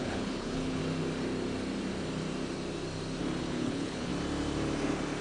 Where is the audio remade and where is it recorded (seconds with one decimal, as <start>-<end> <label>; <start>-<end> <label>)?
0.0-0.8 remade; 0.8-3.4 recorded; 3.4-4.1 remade; 4.1-5.2 recorded